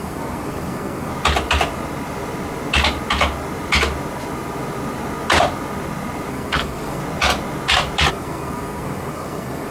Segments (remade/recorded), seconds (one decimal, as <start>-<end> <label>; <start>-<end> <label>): 0.0-1.1 remade; 1.1-6.3 recorded; 6.3-7.0 remade; 7.0-8.1 recorded; 8.1-9.7 remade